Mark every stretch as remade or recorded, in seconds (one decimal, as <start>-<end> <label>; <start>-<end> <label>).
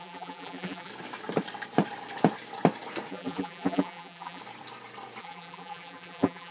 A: 0.0-0.9 remade; 0.9-3.1 recorded; 3.1-4.4 remade; 4.4-5.2 recorded; 5.2-6.5 remade